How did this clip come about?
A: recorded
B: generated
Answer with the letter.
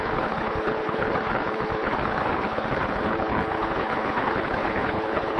B